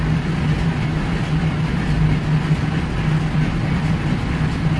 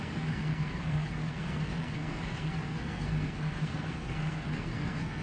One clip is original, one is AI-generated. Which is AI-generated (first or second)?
second